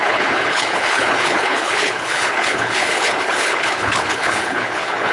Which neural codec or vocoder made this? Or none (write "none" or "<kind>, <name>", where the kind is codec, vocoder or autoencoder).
codec, HILCodec